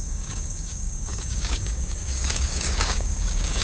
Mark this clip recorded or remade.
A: remade